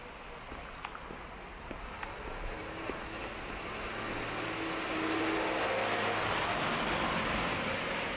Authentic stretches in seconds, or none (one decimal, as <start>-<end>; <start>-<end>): 0.0-8.2